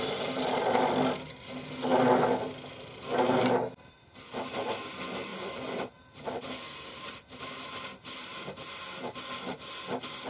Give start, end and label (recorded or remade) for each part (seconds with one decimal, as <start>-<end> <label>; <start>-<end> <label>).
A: 0.0-10.3 recorded